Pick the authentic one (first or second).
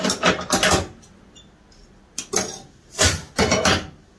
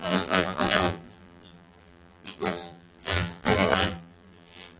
first